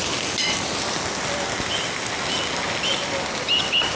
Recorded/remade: recorded